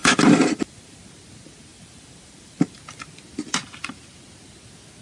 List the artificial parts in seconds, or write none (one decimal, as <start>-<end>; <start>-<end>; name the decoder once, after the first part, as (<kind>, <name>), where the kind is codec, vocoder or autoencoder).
0.0-1.1 (vocoder, BigVGAN v2); 1.7-2.8